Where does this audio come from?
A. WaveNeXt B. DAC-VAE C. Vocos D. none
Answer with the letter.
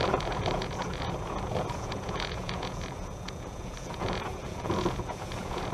C